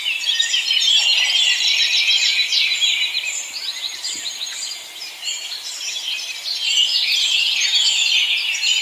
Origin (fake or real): fake